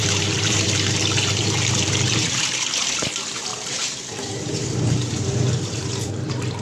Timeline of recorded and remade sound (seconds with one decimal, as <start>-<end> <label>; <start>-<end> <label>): 0.0-2.3 remade; 2.3-3.5 recorded; 3.5-6.1 remade; 6.1-6.6 recorded